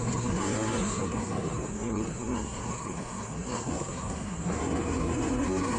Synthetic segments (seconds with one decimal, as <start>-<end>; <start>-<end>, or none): 0.0-5.8